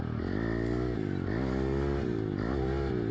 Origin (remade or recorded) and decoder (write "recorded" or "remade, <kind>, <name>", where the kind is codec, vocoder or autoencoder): recorded